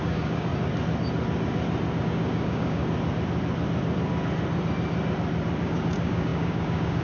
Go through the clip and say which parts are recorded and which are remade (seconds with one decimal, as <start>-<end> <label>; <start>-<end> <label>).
0.0-0.5 remade; 0.5-2.0 recorded; 2.0-2.8 remade; 2.8-5.6 recorded; 5.6-7.0 remade